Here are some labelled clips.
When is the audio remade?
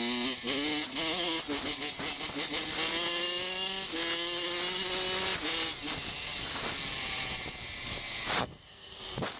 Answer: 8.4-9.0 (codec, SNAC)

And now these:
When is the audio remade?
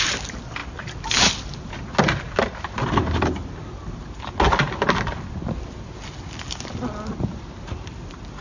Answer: none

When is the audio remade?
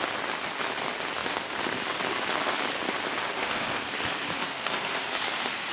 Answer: 3.4-3.9 (codec, SNAC); 4.4-4.9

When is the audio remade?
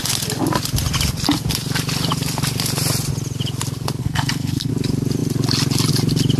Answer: 4.0-4.7 (codec, SNAC)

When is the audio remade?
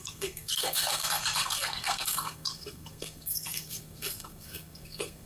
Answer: 0.0-5.3 (codec, SNAC)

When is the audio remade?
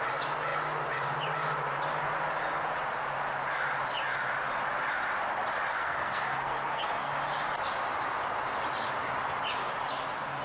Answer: 5.8-7.1 (codec, SNAC)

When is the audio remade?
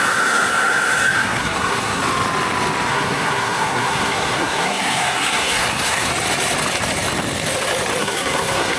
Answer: 0.0-2.0 (codec, SNAC); 2.9-6.1; 8.0-8.8